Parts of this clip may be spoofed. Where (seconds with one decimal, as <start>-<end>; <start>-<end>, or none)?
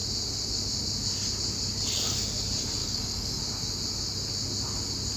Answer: 2.8-3.4